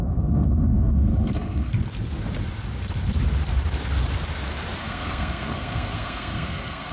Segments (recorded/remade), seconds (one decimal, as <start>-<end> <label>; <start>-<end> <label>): 0.0-1.7 remade; 1.7-4.8 recorded; 4.8-6.9 remade